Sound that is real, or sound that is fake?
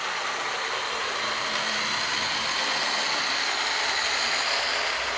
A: real